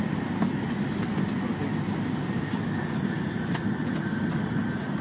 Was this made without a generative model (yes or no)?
yes